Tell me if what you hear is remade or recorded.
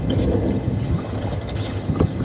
remade